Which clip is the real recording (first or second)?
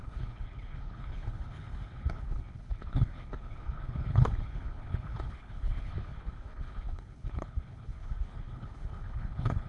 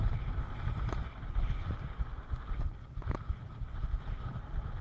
second